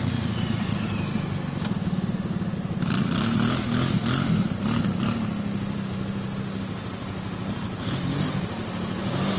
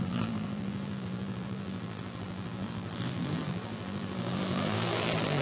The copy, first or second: second